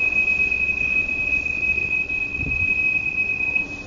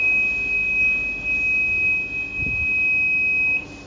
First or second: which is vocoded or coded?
first